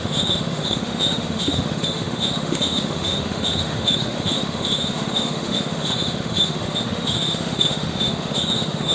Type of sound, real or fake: fake